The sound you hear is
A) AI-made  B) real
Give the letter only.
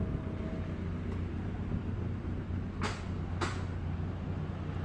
B